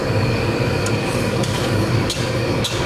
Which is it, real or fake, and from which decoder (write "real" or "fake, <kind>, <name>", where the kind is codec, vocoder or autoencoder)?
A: fake, codec, DAC